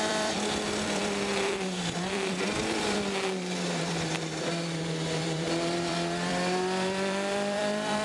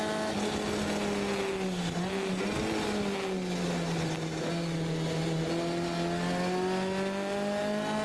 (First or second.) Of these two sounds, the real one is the second